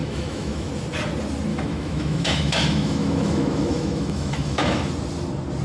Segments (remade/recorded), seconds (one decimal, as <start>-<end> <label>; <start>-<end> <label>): 0.0-0.7 remade; 0.7-1.5 recorded; 1.5-4.9 remade; 4.9-5.6 recorded

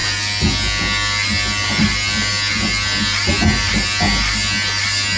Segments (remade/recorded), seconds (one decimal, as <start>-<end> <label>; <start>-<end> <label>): 0.0-5.2 recorded

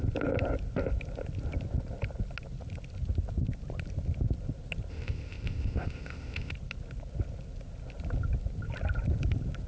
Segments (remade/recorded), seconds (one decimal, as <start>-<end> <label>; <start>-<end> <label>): 0.0-4.9 recorded; 4.9-6.5 remade; 6.5-9.7 recorded